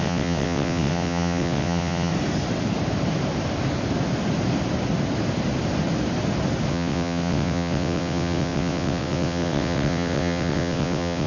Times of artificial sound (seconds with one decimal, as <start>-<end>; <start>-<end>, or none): 0.0-2.1; 6.7-11.3